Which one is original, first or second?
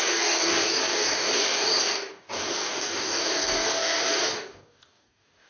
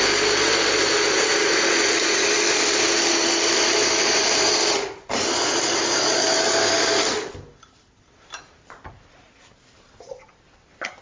second